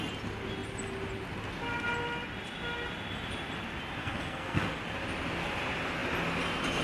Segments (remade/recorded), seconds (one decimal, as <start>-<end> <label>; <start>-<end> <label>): 0.0-4.0 recorded; 4.0-4.8 remade; 4.8-6.8 recorded